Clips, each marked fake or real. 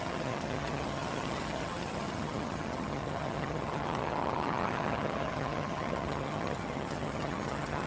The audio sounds fake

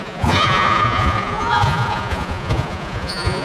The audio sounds fake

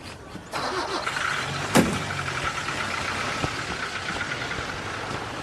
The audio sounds real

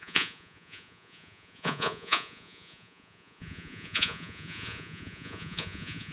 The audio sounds fake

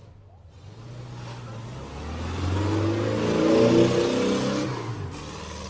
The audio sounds real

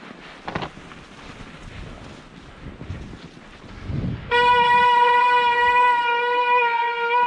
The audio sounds real